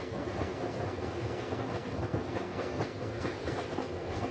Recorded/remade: remade